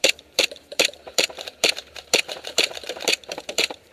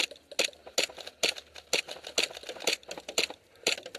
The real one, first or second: second